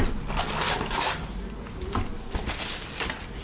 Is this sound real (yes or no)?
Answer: yes